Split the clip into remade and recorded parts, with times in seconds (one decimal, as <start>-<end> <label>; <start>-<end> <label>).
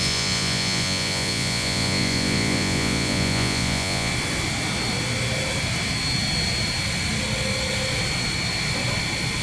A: 0.0-4.1 remade; 4.1-9.4 recorded